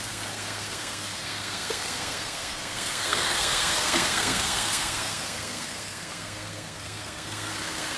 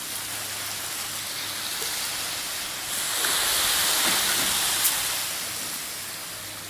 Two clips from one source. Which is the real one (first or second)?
second